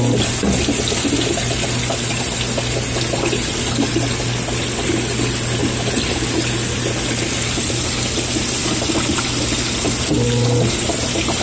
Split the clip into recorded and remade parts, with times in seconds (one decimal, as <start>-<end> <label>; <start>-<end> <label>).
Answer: 0.0-11.4 recorded